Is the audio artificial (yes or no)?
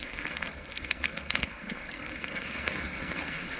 yes